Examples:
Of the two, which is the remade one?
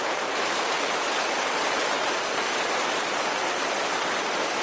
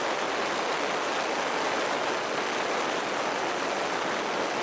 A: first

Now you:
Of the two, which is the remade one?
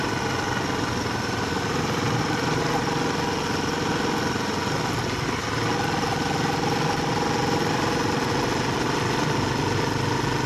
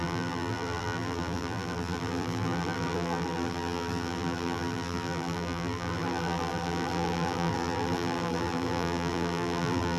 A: second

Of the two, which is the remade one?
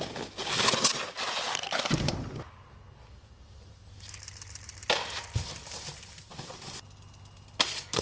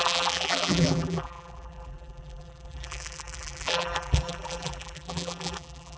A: second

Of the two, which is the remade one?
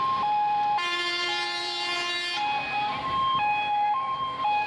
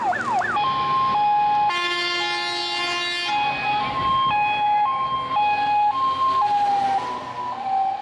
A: first